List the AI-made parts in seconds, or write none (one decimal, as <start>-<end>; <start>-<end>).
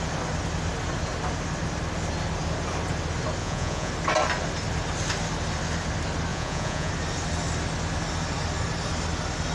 3.4-3.9; 6.3-6.9